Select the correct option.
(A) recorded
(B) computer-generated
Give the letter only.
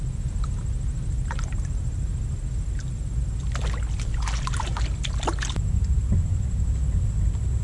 A